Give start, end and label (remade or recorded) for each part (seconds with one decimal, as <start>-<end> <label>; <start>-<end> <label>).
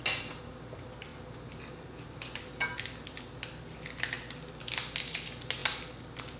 0.0-6.4 recorded